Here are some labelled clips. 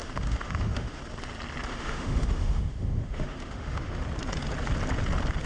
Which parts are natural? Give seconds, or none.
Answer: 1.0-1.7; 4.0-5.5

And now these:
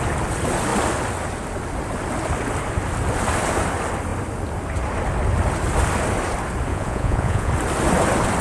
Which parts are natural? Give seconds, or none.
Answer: 0.0-6.7; 7.5-8.4

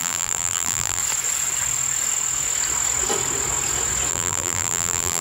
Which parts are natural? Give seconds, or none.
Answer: 1.0-4.1

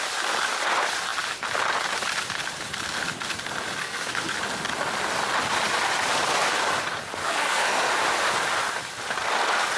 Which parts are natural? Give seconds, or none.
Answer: 0.0-3.8; 4.4-7.2; 7.9-9.8

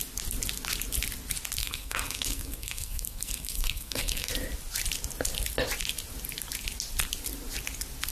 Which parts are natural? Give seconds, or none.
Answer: 0.0-1.6; 4.3-8.1